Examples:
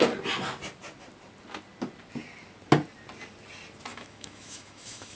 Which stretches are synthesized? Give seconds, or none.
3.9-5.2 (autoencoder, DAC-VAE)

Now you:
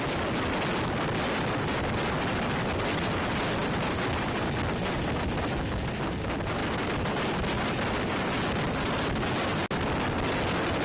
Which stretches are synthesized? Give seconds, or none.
none

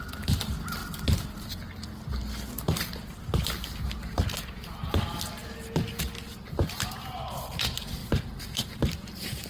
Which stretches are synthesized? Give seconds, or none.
8.0-9.5 (vocoder, BigVGAN v2)

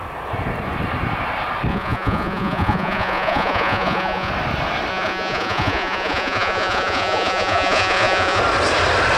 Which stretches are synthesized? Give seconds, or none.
1.7-4.3 (vocoder, Vocos); 4.9-8.4

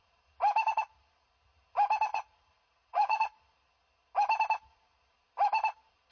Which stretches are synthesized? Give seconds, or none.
2.1-3.4 (vocoder, Vocos)

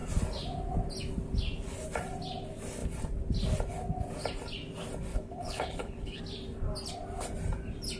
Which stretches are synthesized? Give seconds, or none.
5.1-6.2 (codec, HILCodec)

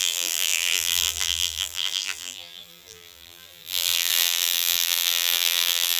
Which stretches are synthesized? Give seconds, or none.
0.0-6.0 (vocoder, BigVGAN v2)